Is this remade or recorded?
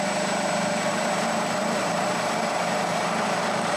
remade